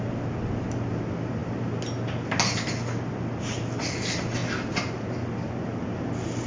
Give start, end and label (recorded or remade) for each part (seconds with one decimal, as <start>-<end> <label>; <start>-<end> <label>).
0.0-6.5 recorded